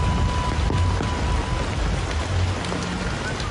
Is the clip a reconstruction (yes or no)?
no